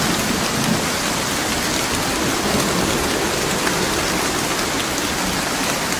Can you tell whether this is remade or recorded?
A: recorded